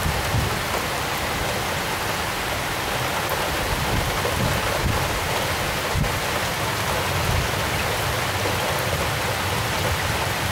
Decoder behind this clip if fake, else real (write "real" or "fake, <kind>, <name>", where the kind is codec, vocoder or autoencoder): real